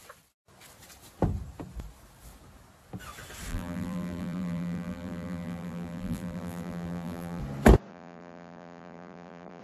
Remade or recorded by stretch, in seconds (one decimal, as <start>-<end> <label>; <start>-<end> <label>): 0.0-3.5 recorded; 3.5-7.4 remade; 7.4-7.9 recorded; 7.9-9.6 remade